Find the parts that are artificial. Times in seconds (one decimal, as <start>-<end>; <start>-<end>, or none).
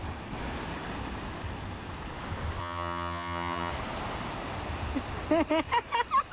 2.6-3.7